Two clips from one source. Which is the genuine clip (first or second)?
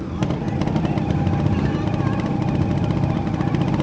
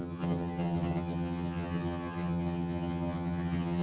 first